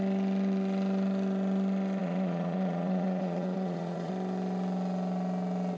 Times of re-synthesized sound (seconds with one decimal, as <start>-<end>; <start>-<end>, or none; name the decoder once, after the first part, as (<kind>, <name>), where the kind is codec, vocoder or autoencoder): 2.0-4.1 (vocoder, Vocos)